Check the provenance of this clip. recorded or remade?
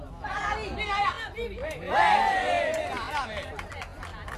recorded